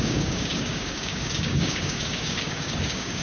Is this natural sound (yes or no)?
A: no